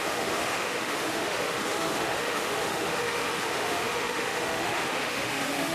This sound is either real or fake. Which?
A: fake